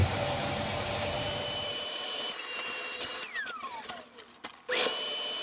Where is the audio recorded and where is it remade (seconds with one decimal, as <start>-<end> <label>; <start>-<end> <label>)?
0.0-3.2 remade; 3.2-5.4 recorded